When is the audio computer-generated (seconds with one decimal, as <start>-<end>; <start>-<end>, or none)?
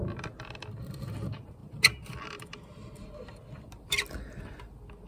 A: none